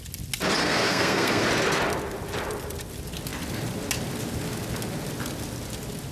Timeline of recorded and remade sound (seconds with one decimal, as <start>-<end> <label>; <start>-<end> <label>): 0.0-0.6 recorded; 0.6-1.4 remade; 1.4-6.1 recorded

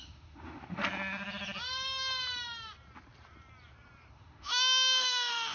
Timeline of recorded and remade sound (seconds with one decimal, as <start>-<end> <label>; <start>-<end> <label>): 0.0-0.8 remade; 0.8-4.1 recorded; 4.1-5.5 remade

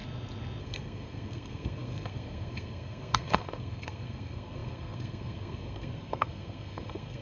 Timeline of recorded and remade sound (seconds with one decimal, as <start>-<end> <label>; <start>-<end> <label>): 0.0-0.6 recorded; 0.6-7.2 remade